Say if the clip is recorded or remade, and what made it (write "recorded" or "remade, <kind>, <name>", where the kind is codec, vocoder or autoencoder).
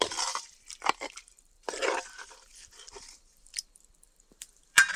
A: remade, vocoder, BigVGAN v2